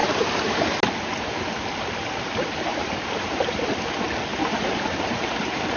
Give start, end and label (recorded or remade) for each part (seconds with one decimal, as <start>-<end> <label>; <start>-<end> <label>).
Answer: 0.0-0.6 remade; 0.6-2.7 recorded; 2.7-3.7 remade; 3.7-4.3 recorded; 4.3-5.8 remade